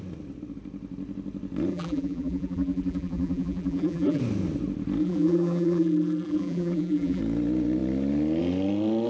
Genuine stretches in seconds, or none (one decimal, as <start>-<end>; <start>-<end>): 0.0-1.7; 4.2-5.0; 7.2-9.1